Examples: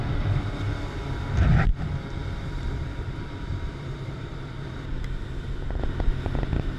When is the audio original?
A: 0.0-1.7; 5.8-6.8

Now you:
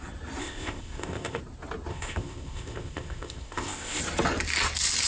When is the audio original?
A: 0.0-0.4; 1.4-1.9; 4.0-5.1

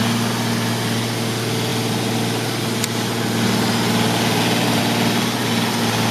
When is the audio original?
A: 0.0-6.1

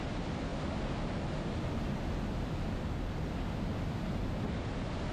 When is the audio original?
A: 0.0-5.1

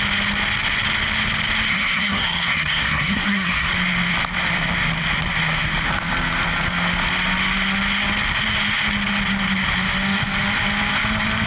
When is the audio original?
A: 0.0-1.7; 3.7-11.5

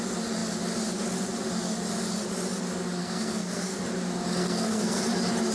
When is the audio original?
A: 0.0-3.0; 3.8-4.4; 5.0-5.5

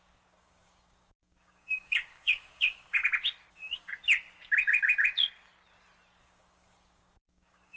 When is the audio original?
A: 3.0-3.5; 3.9-6.2